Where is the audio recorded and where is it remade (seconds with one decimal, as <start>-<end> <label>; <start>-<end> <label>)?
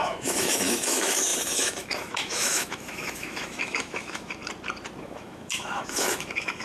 0.0-4.4 remade; 4.4-5.0 recorded; 5.0-6.6 remade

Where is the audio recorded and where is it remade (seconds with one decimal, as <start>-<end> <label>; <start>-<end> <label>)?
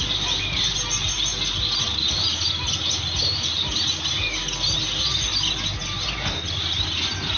0.0-7.4 recorded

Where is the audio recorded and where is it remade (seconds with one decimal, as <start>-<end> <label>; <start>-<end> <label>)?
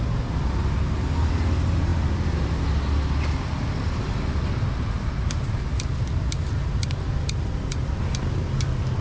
0.0-9.0 recorded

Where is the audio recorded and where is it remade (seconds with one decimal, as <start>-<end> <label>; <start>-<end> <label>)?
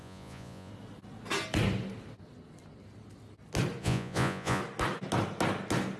0.0-0.7 remade; 0.7-3.8 recorded; 3.8-4.6 remade; 4.6-6.0 recorded